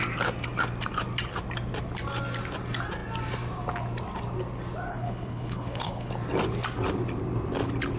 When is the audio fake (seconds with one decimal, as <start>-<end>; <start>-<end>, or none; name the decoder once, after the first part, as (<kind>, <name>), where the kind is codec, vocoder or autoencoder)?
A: 4.9-6.1 (codec, HILCodec)